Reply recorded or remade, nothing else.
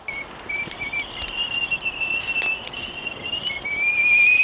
recorded